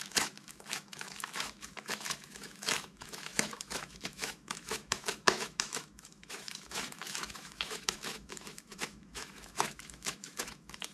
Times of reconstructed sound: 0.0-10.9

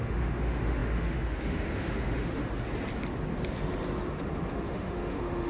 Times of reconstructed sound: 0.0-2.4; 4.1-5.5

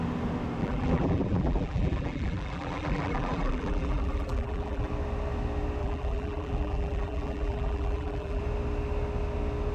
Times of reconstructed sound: 0.6-4.9; 5.8-8.4

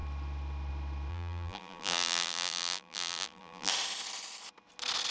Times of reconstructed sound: 1.1-3.7

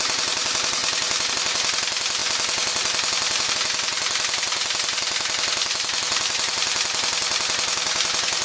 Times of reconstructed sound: none

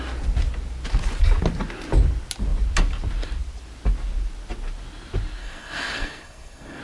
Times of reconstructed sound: 5.4-6.8

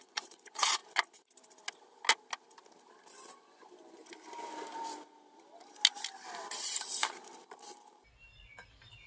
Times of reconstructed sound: 0.0-0.8; 3.1-4.0

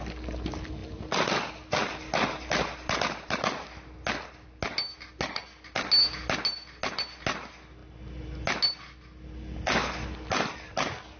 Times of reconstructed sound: none